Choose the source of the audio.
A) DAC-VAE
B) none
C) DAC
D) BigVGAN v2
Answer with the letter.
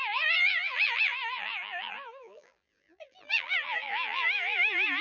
D